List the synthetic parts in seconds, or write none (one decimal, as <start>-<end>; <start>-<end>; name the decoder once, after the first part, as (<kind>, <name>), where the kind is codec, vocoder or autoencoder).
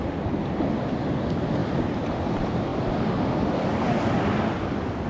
1.6-2.3 (vocoder, BigVGAN v2); 2.7-3.3